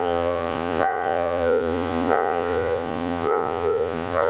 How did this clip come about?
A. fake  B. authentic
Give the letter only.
A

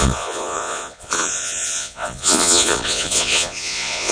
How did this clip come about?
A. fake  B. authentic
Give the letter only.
A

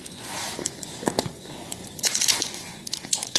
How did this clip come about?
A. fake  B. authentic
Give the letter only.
A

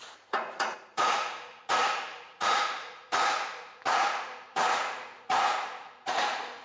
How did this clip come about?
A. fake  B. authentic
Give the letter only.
A